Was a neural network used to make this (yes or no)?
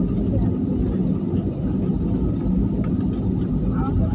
no